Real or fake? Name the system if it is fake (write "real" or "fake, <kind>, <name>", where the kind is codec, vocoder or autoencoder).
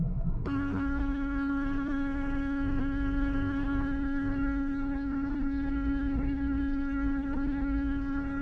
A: fake, codec, SNAC